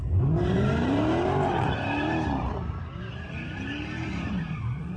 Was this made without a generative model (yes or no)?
no